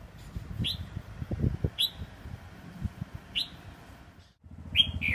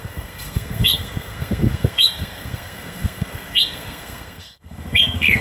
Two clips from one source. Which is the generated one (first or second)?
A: second